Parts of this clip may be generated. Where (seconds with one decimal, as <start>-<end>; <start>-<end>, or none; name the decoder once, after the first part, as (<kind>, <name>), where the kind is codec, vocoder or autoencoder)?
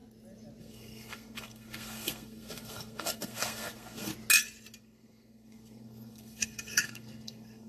0.6-4.1 (codec, SNAC); 4.8-7.7